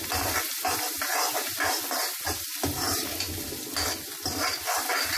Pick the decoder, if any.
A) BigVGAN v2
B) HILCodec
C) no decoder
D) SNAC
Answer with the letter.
C